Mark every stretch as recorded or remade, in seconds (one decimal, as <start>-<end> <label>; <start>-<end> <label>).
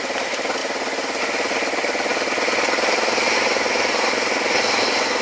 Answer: 0.0-5.2 recorded